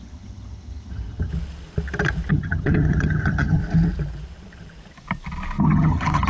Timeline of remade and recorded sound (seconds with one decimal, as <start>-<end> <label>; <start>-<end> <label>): 0.0-1.3 remade; 1.3-2.3 recorded; 2.3-3.6 remade; 3.6-5.6 recorded; 5.6-6.3 remade